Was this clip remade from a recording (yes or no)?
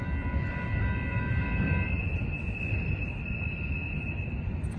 no